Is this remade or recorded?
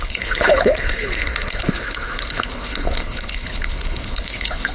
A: remade